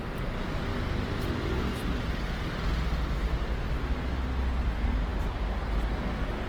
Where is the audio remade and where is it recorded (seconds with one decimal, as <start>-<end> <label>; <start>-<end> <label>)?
0.0-6.5 recorded